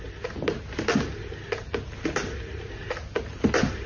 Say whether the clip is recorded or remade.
recorded